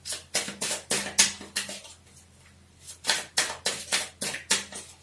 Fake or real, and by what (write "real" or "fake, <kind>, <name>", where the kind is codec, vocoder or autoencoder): real